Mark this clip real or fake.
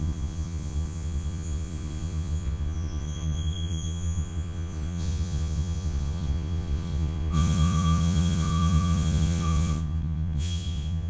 fake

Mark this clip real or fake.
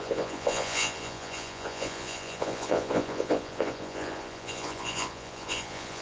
fake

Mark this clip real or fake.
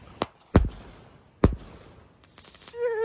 real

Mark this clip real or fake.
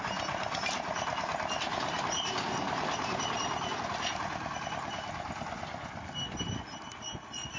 real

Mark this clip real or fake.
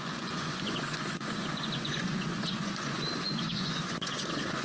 fake